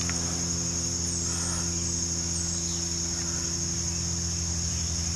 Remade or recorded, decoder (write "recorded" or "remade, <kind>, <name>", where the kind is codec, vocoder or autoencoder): recorded